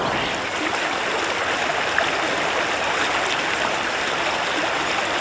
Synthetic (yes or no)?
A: no